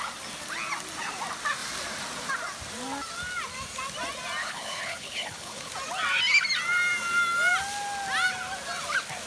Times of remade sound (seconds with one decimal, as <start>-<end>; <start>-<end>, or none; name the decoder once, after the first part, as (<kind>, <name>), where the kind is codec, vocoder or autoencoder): 4.4-5.7 (codec, HILCodec)